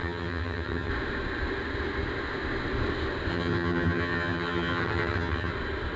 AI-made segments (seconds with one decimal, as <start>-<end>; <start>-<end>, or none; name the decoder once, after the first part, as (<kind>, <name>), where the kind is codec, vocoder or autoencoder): 0.0-0.9 (vocoder, HiFi-GAN); 3.3-5.5